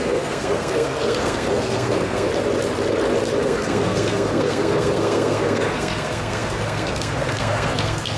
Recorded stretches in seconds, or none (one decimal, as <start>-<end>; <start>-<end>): 2.3-3.4